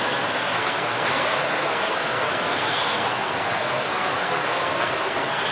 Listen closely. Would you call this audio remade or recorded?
remade